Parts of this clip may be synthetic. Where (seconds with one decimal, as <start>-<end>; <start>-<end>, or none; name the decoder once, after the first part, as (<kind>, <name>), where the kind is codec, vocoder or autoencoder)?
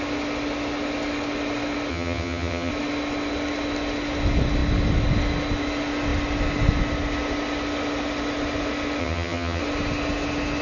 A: 1.9-2.7 (vocoder, HiFi-GAN); 9.0-9.6